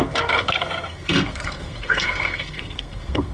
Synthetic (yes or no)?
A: yes